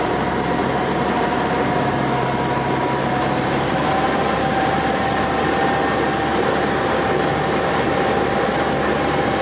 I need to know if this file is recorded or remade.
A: remade